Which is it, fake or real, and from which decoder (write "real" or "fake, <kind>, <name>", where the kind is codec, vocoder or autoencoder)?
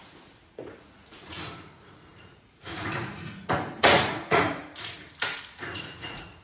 fake, vocoder, Vocos